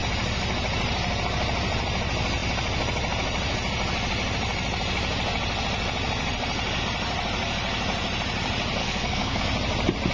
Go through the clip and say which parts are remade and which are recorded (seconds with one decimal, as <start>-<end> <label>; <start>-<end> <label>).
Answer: 0.0-8.8 recorded; 8.8-9.4 remade; 9.4-10.1 recorded